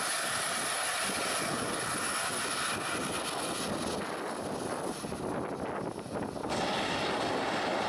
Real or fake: real